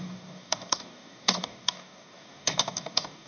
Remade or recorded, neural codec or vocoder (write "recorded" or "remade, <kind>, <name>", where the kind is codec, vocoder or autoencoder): remade, codec, DAC